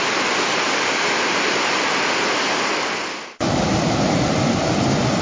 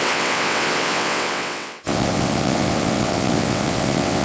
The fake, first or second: second